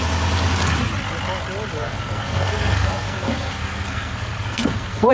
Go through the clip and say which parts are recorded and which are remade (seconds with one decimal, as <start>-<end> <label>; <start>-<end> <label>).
0.0-1.8 recorded; 1.8-5.1 remade